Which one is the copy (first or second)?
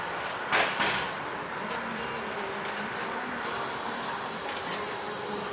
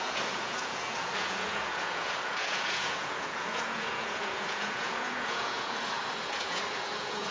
second